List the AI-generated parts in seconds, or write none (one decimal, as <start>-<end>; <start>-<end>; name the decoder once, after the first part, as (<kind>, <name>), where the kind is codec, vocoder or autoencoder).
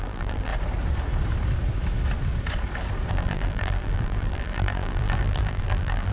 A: 0.0-0.5 (vocoder, BigVGAN v2); 3.1-6.1